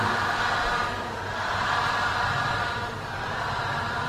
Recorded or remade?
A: recorded